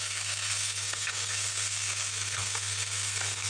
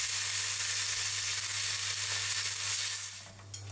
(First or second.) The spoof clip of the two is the first